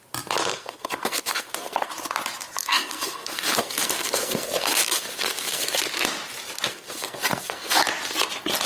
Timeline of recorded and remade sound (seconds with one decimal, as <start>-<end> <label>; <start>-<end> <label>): 0.0-0.5 recorded; 0.5-1.9 remade; 1.9-2.6 recorded; 2.6-5.8 remade; 5.8-6.7 recorded; 6.7-7.8 remade; 7.8-8.7 recorded